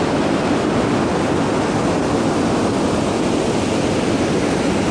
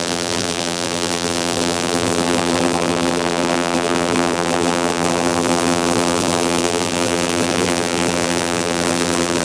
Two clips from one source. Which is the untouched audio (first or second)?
first